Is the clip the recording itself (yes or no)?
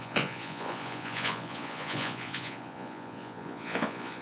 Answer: no